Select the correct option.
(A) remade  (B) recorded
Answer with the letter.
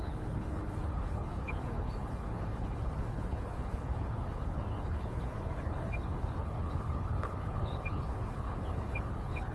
A